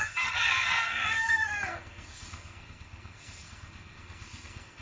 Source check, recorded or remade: remade